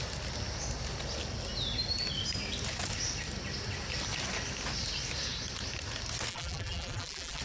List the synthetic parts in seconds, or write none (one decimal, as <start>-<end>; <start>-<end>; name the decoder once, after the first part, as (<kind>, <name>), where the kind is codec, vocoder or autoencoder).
6.3-7.4 (vocoder, BigVGAN v2)